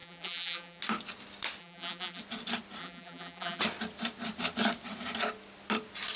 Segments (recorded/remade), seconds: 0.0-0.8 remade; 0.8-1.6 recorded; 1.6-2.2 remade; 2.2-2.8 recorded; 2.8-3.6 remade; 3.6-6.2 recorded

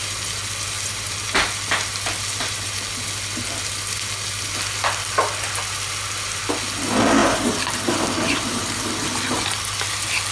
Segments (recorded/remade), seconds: 0.0-7.2 recorded; 7.2-8.9 remade; 8.9-10.3 recorded

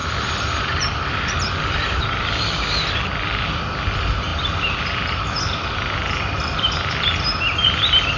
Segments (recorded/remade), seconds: 0.0-8.2 recorded

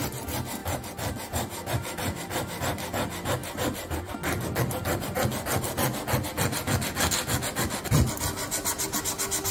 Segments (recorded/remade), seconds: 0.0-0.6 recorded; 0.6-2.6 remade; 2.6-3.4 recorded; 3.4-4.1 remade; 4.1-9.5 recorded

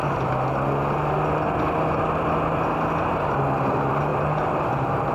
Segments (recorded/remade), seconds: 0.0-3.1 recorded; 3.1-5.1 remade

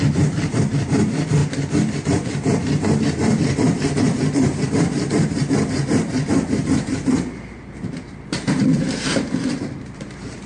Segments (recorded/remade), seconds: 0.0-1.4 remade; 1.4-1.9 recorded; 1.9-10.5 remade

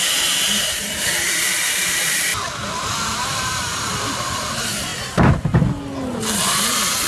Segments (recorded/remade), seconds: 0.0-2.3 remade; 2.3-2.8 recorded; 2.8-4.9 remade; 4.9-6.1 recorded; 6.1-7.1 remade

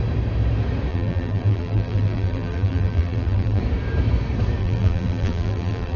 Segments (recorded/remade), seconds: 0.0-0.9 recorded; 0.9-3.6 remade; 3.6-4.6 recorded; 4.6-6.0 remade